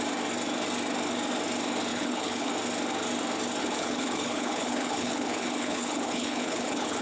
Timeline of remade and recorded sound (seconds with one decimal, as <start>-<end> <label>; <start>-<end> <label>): 0.0-1.9 recorded; 1.9-2.5 remade; 2.5-3.6 recorded; 3.6-7.0 remade